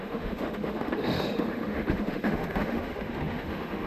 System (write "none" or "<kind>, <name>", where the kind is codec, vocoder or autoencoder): autoencoder, DAC-VAE